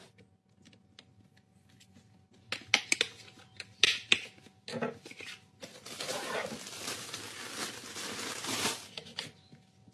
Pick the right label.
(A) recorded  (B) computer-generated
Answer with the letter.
A